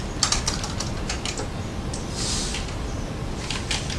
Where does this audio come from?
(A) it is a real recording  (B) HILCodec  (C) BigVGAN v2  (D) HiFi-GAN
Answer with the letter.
C